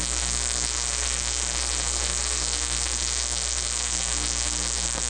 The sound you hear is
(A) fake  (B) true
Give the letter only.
A